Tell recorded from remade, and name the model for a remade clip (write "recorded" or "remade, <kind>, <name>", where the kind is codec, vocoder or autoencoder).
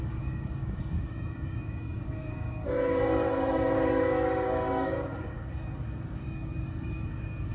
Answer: remade, codec, DAC